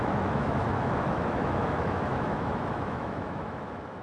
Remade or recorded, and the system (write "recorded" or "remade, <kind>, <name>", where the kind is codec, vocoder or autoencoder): remade, autoencoder, DAC-VAE